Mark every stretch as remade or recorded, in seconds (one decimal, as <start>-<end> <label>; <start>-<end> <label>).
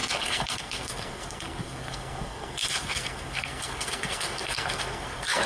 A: 0.0-5.5 remade